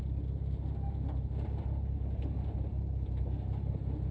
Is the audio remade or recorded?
recorded